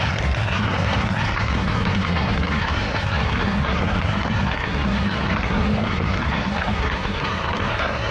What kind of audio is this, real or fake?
fake